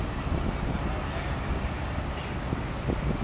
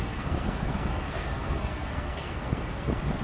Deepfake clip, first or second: second